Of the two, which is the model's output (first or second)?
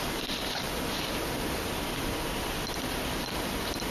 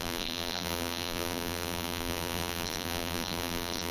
second